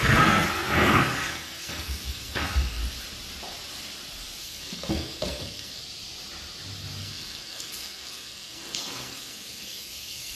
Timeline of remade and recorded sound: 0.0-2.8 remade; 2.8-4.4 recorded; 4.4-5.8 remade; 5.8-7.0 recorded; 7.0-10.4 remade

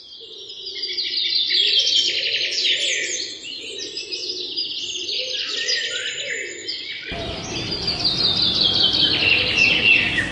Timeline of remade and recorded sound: 0.0-4.6 recorded; 4.6-5.5 remade; 5.5-6.6 recorded; 6.6-9.1 remade; 9.1-10.3 recorded

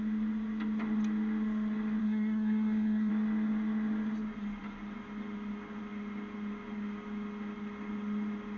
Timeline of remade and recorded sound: 0.0-2.0 recorded; 2.0-3.1 remade; 3.1-8.6 recorded